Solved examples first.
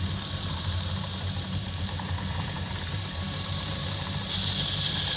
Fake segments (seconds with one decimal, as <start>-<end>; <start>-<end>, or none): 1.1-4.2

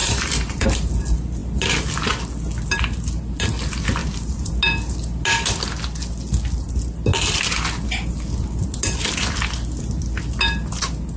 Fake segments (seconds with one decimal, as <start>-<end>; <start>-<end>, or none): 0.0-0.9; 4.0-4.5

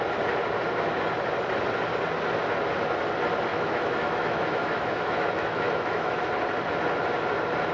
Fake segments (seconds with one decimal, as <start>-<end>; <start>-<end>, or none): 3.5-6.2

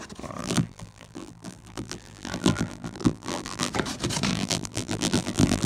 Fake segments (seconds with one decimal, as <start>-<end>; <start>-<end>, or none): 0.4-3.7; 4.3-5.7

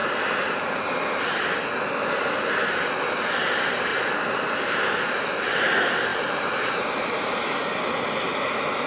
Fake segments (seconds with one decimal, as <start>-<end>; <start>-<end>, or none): 0.0-1.0; 3.9-5.6; 6.1-7.9

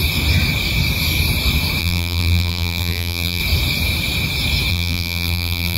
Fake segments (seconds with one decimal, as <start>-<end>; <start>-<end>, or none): 1.8-3.4; 4.7-5.8

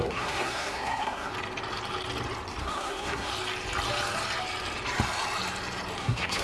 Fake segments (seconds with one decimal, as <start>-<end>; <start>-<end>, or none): 0.0-1.3; 2.6-3.3; 6.0-6.4

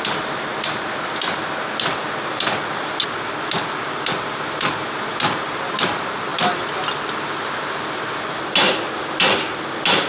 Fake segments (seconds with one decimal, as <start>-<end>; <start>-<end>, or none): none